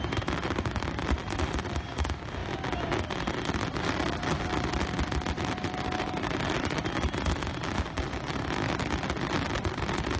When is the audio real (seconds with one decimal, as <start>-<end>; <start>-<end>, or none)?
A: 0.0-1.0; 1.5-10.2